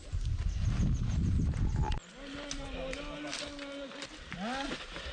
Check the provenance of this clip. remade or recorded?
recorded